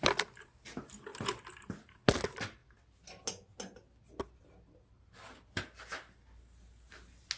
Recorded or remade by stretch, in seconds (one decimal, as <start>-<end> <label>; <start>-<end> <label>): 0.0-7.4 recorded